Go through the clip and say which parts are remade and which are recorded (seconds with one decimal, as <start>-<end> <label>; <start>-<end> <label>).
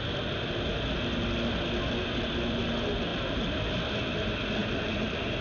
0.0-4.6 recorded; 4.6-5.4 remade